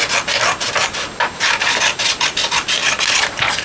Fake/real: real